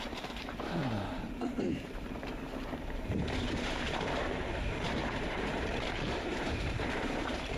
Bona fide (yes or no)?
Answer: no